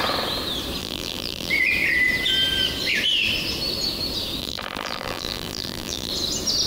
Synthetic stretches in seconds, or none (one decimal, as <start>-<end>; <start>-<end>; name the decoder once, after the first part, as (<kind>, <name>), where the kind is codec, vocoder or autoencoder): 0.8-1.5 (vocoder, BigVGAN v2); 4.4-6.1